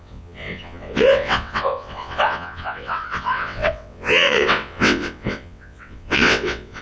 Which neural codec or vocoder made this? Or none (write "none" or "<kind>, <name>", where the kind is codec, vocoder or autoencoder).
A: vocoder, WaveNeXt